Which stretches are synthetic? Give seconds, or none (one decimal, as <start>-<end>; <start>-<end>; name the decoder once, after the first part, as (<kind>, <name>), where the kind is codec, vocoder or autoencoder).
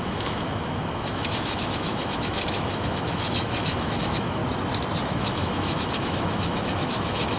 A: 0.0-4.4 (autoencoder, DAC-VAE); 5.0-7.4